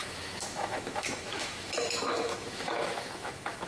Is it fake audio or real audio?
fake